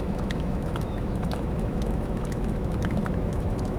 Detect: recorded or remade remade